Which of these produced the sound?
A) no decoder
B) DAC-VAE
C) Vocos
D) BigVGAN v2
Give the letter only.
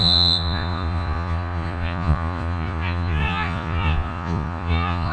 C